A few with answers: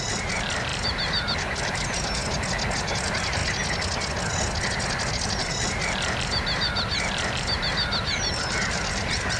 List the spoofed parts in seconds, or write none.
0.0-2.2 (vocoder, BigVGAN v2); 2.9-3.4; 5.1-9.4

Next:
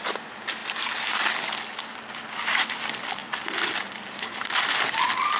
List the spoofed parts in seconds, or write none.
none

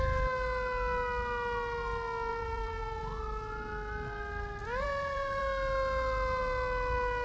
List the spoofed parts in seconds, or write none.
2.3-3.2 (vocoder, BigVGAN v2); 4.6-5.4

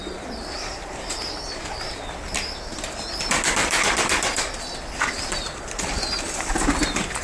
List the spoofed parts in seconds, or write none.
0.0-1.4 (vocoder, BigVGAN v2); 3.6-4.5

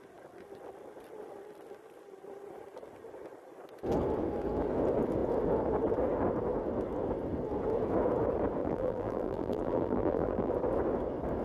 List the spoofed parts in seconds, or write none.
8.6-10.5 (vocoder, BigVGAN v2)

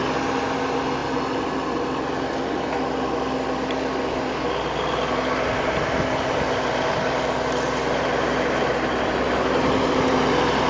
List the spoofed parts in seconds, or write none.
none

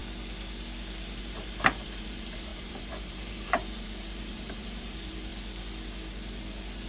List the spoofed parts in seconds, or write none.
1.2-5.3 (vocoder, BigVGAN v2)